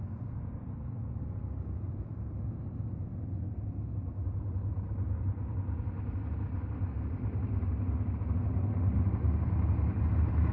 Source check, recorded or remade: recorded